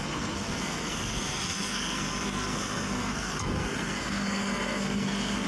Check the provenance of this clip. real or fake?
fake